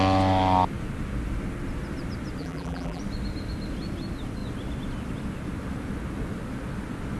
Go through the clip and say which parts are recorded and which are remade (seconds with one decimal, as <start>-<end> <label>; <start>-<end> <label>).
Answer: 0.0-2.4 recorded; 2.4-3.0 remade; 3.0-7.2 recorded